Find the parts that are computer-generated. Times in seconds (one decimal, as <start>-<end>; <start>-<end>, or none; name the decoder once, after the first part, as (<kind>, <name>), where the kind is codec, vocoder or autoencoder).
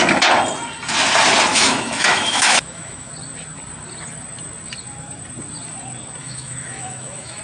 1.5-3.1 (autoencoder, DAC-VAE); 6.2-7.4